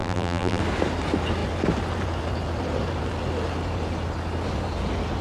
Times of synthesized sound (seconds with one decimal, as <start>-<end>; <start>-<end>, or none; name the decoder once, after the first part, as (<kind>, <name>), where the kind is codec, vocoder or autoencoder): 0.0-0.6 (vocoder, BigVGAN v2)

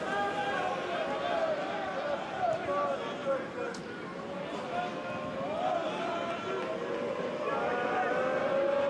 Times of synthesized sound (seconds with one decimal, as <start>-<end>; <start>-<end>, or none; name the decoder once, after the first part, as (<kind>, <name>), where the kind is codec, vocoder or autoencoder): none

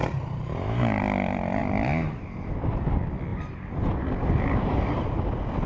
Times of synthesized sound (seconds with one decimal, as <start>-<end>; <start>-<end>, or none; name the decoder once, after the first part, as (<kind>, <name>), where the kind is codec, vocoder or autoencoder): 0.0-1.0 (vocoder, BigVGAN v2); 3.3-5.1

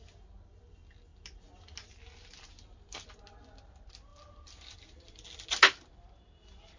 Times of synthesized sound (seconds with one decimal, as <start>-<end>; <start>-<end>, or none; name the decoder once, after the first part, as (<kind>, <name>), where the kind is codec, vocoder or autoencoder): none